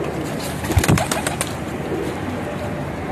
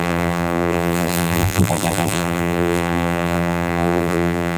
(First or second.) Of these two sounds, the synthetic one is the second